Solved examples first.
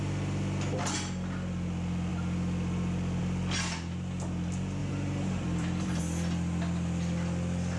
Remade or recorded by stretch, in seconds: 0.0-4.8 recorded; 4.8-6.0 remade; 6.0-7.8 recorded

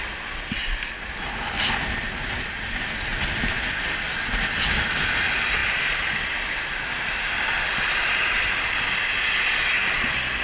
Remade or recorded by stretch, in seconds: 0.0-10.4 recorded

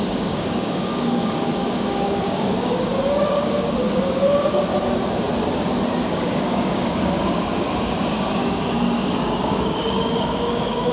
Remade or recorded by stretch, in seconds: 0.0-4.7 remade; 4.7-6.0 recorded; 6.0-10.9 remade

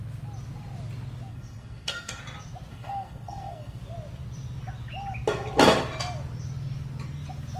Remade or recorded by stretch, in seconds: 0.0-1.3 recorded; 1.3-2.2 remade; 2.2-2.7 recorded; 2.7-3.8 remade; 3.8-7.6 recorded